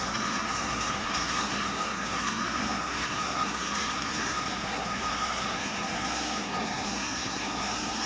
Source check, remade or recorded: remade